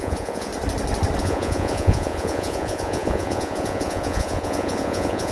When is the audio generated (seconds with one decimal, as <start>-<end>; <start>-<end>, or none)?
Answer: 0.0-0.5; 1.2-5.3